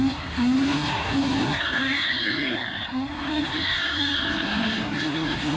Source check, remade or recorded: remade